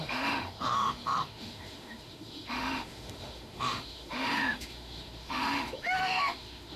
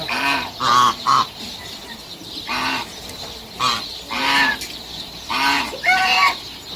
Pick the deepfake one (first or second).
first